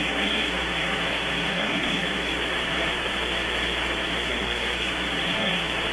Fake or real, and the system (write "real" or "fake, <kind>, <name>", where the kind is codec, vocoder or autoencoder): fake, codec, SNAC